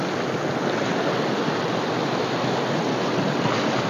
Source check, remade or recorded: recorded